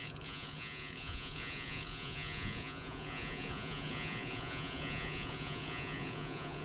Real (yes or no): no